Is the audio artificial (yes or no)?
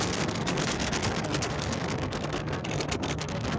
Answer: yes